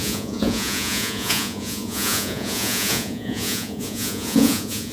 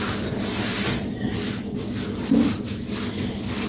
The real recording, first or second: second